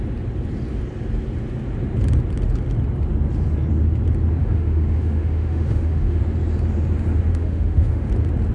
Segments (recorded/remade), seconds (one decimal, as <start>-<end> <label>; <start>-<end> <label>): 0.0-4.4 recorded; 4.4-6.2 remade; 6.2-7.3 recorded; 7.3-8.1 remade; 8.1-8.5 recorded